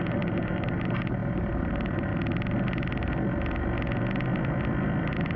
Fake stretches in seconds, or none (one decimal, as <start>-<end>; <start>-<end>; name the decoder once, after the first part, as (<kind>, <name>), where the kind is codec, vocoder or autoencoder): 0.0-2.1 (vocoder, BigVGAN v2); 5.0-5.4